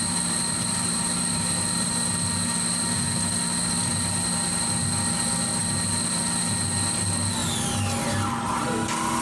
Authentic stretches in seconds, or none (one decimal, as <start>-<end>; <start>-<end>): 0.0-9.2